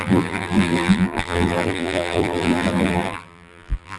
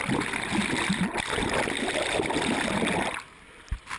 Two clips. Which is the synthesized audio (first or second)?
first